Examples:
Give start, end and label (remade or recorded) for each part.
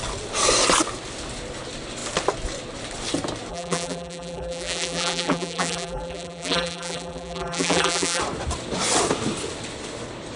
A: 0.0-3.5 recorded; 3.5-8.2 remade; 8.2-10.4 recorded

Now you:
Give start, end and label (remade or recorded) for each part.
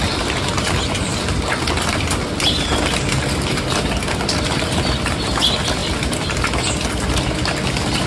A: 0.0-8.1 recorded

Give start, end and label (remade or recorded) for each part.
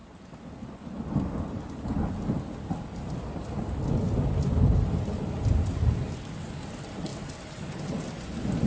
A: 0.0-8.7 recorded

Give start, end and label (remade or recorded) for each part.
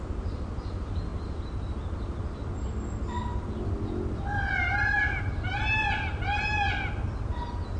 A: 0.0-7.8 recorded